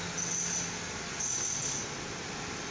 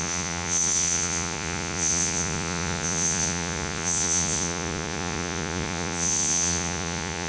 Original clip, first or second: first